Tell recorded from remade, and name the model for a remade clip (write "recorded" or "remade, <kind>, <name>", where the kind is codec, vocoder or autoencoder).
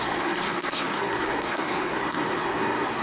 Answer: remade, codec, SNAC